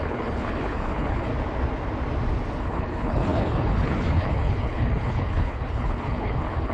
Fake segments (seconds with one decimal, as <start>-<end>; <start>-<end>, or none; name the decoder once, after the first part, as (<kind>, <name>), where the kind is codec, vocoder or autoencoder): 0.0-1.3 (codec, HILCodec); 2.6-6.7